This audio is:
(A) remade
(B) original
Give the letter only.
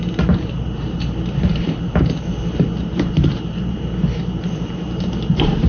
A